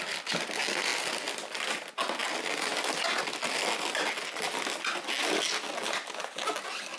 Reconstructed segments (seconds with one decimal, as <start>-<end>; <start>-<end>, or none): none